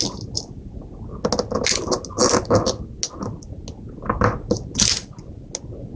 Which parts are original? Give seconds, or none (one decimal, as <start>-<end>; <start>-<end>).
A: 0.0-6.0